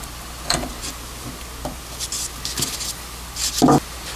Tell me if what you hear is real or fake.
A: real